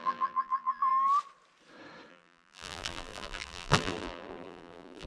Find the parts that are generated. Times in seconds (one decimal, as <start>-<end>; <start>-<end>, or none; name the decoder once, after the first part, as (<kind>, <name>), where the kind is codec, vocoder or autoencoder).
0.0-0.9 (vocoder, BigVGAN v2); 2.1-5.1